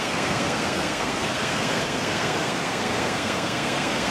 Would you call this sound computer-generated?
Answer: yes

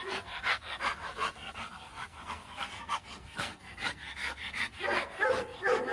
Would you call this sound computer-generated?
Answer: yes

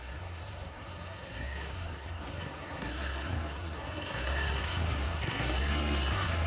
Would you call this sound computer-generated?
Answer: yes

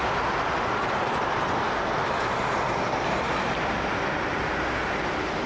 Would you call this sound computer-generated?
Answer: no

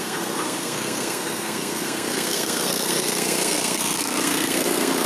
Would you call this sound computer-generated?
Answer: yes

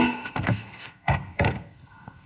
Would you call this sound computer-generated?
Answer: yes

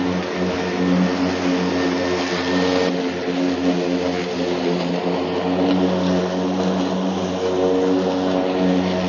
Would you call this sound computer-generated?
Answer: no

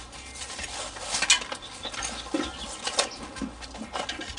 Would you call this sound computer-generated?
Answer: no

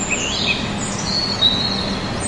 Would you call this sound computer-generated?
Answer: no